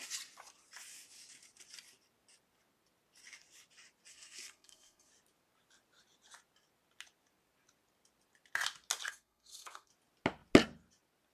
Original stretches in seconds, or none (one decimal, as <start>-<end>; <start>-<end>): 0.0-4.1; 5.1-9.1; 9.9-11.3